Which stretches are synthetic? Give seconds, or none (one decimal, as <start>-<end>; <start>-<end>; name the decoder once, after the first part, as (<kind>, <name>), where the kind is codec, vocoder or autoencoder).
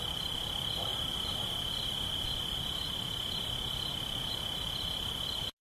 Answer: none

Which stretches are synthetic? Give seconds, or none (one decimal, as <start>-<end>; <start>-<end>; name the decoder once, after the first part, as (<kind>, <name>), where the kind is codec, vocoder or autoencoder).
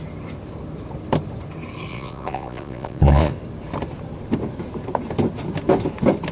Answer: 1.9-3.3 (vocoder, Vocos)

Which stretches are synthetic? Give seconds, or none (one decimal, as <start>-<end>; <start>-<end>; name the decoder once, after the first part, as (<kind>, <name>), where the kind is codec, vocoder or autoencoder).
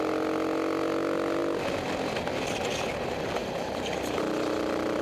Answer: 3.4-4.2 (vocoder, BigVGAN v2)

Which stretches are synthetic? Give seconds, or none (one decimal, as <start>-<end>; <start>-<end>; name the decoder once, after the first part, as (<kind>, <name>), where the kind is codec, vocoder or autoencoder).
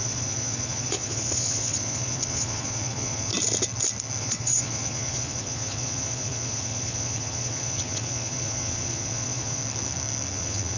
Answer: 0.0-3.3 (vocoder, Vocos); 4.2-9.6; 10.3-10.8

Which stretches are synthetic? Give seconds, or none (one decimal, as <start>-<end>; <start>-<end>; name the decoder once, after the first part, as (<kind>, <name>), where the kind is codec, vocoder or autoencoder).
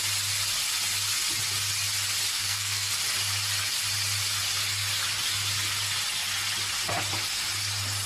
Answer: 2.3-2.9 (codec, SNAC)